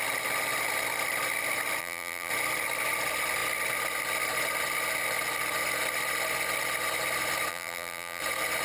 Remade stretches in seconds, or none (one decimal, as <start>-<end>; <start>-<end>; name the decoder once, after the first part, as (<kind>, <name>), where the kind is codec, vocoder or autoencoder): 1.8-2.3 (vocoder, BigVGAN v2); 7.5-8.2